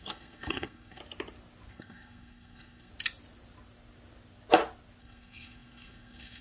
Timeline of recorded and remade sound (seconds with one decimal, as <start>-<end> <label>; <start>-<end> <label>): 0.0-1.0 remade; 1.0-1.7 recorded; 1.7-2.9 remade; 2.9-5.0 recorded; 5.0-6.4 remade